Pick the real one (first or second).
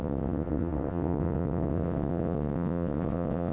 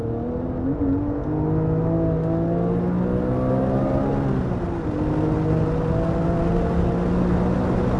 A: second